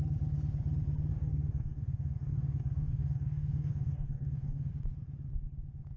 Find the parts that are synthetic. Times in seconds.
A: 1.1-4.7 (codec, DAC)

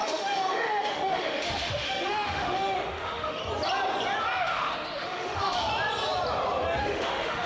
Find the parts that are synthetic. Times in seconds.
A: 0.0-3.4 (autoencoder, DAC-VAE); 4.4-5.7; 6.8-7.5

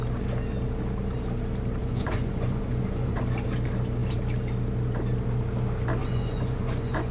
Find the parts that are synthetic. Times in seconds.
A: 1.8-3.2 (vocoder, Vocos); 6.0-7.1